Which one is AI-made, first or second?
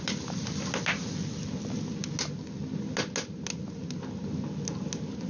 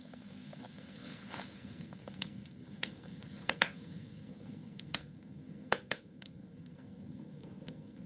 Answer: second